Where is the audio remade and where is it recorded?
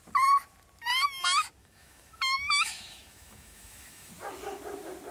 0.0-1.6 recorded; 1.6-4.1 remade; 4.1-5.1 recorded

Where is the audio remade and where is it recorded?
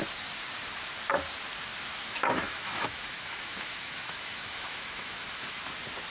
0.0-1.9 recorded; 1.9-5.6 remade; 5.6-6.1 recorded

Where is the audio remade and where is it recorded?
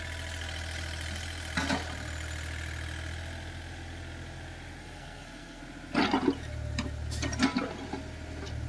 0.0-4.8 recorded; 4.8-5.6 remade; 5.6-8.7 recorded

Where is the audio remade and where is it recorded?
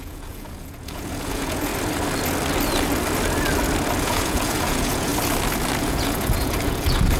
0.0-1.7 remade; 1.7-4.0 recorded; 4.0-5.1 remade; 5.1-5.8 recorded; 5.8-7.2 remade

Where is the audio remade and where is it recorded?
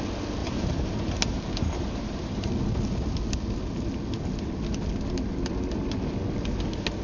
0.0-0.4 recorded; 0.4-2.5 remade; 2.5-7.0 recorded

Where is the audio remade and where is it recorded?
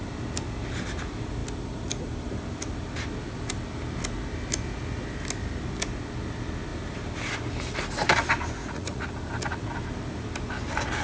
0.0-8.6 recorded; 8.6-9.1 remade; 9.1-11.0 recorded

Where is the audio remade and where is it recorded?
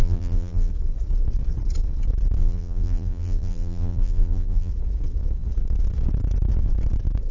0.0-0.7 remade; 0.7-2.4 recorded; 2.4-4.7 remade; 4.7-7.3 recorded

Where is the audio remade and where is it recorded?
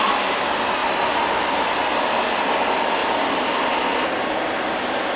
0.0-5.2 recorded